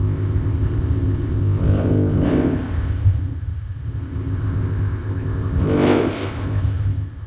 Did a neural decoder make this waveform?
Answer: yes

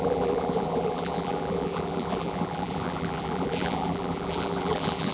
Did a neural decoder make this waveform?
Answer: yes